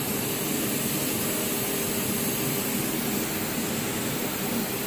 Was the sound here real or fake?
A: real